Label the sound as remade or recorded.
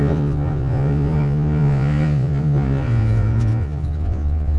remade